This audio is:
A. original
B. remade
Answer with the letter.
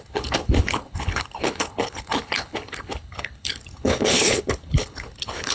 B